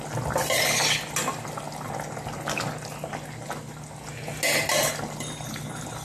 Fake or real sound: real